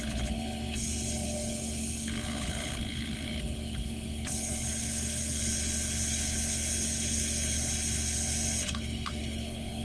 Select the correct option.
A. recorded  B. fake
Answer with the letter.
B